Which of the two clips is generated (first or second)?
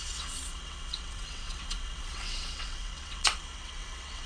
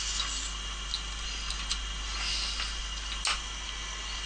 first